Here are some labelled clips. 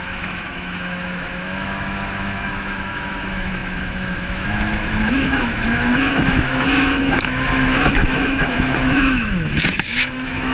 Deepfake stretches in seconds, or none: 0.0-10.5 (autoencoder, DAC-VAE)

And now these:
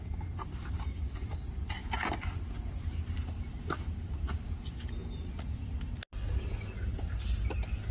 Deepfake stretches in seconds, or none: none

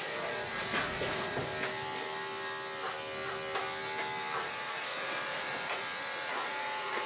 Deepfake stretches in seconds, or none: 0.0-1.5 (vocoder, Vocos); 4.4-7.1